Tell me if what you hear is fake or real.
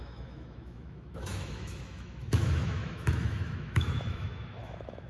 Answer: fake